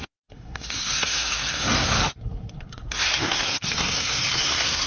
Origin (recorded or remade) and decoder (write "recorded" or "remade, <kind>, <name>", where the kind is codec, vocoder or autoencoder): remade, codec, SNAC